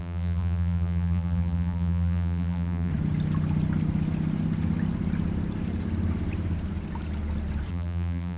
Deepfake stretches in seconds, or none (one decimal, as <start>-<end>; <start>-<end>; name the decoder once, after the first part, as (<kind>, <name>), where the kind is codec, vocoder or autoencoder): 0.0-2.9 (vocoder, BigVGAN v2); 7.7-8.4